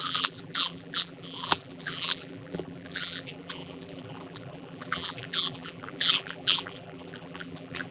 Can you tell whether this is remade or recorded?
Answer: remade